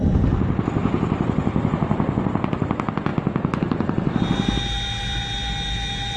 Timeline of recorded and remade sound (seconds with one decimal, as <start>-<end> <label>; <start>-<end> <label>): 0.0-6.2 recorded